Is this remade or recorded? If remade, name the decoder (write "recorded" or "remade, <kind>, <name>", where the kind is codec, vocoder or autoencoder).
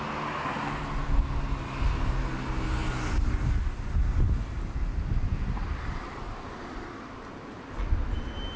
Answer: recorded